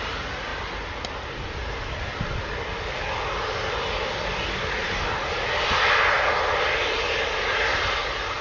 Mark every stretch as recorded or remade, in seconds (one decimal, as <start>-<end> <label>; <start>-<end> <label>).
0.0-8.4 recorded